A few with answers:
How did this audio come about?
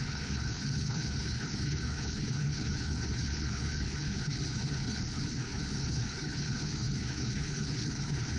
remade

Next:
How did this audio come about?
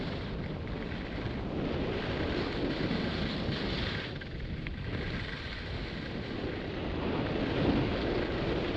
recorded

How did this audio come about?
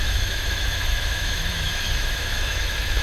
remade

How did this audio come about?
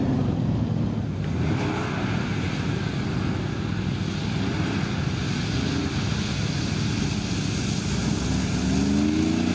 recorded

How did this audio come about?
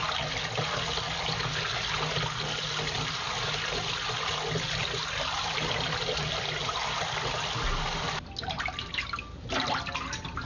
recorded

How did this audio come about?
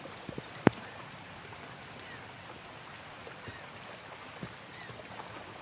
recorded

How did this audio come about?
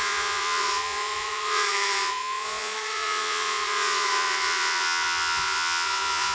remade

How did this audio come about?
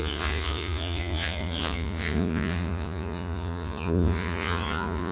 remade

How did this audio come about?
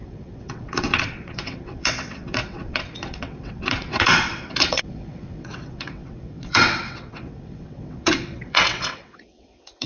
remade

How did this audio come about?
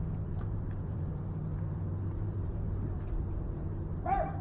remade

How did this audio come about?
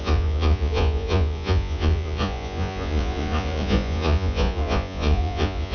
remade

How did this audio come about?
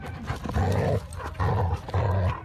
recorded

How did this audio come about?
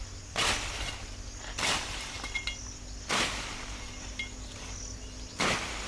recorded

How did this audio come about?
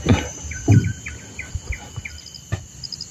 recorded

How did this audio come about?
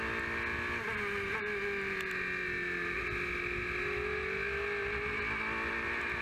recorded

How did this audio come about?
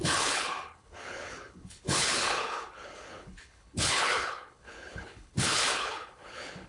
remade